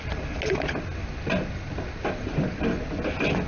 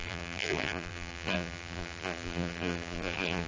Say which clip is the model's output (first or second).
second